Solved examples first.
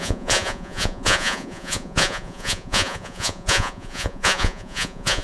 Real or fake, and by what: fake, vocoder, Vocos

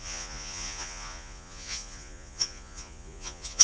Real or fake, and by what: fake, vocoder, Vocos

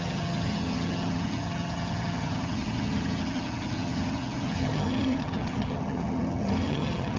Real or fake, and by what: fake, vocoder, HiFi-GAN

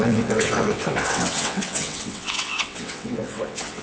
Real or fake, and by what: fake, vocoder, WaveNeXt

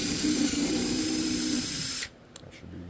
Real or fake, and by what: fake, vocoder, BigVGAN v2